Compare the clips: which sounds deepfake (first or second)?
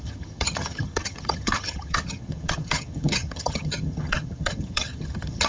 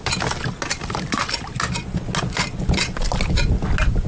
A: first